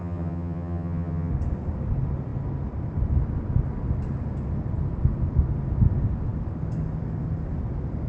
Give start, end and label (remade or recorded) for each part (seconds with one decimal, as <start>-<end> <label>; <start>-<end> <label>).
0.0-1.3 remade; 1.3-8.1 recorded